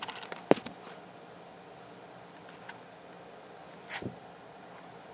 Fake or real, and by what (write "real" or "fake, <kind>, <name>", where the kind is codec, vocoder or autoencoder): real